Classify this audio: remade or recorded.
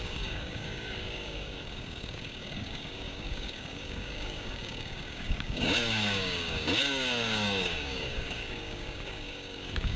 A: remade